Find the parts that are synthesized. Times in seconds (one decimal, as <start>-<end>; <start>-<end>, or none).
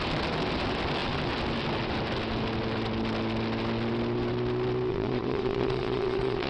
4.9-6.5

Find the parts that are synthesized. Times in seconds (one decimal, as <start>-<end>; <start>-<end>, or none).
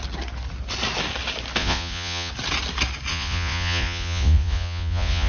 1.6-2.3; 3.1-5.3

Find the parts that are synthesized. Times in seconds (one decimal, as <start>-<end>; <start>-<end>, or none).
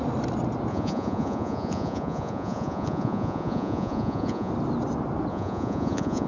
0.7-4.5; 5.3-6.3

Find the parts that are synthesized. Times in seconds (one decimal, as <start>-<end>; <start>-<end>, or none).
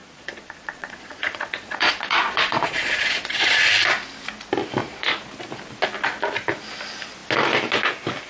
0.0-3.6; 4.8-5.3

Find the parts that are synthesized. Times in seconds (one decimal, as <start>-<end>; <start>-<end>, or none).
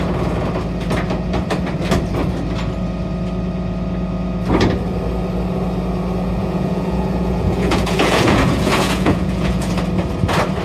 6.4-9.7